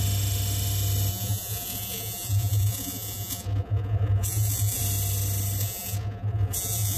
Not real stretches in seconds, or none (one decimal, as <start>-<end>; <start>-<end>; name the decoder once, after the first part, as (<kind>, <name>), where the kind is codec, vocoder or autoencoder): 1.1-4.8 (vocoder, Vocos); 5.6-7.0